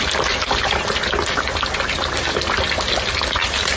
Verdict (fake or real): real